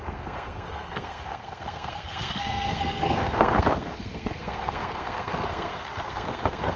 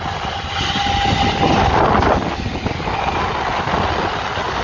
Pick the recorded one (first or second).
second